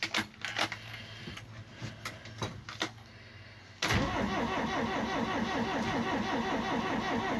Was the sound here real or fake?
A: real